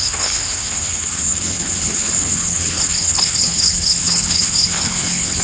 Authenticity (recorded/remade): remade